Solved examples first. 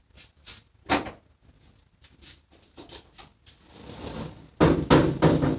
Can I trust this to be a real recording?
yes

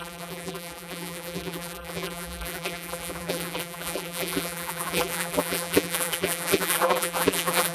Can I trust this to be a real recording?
no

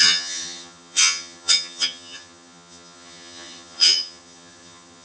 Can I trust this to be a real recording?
no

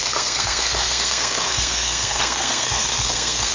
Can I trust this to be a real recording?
no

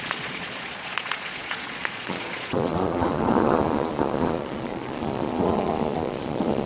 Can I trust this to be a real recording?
no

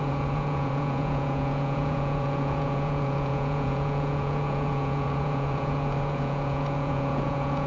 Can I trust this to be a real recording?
no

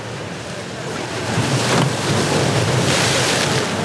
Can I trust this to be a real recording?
yes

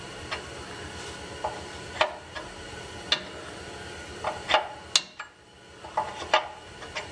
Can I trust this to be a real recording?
yes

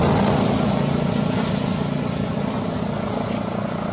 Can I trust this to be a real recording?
yes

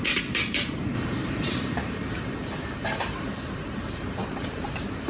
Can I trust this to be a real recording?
no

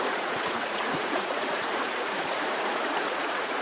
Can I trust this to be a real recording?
no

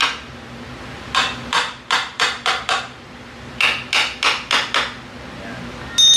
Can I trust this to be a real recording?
yes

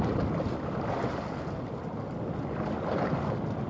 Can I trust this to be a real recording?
yes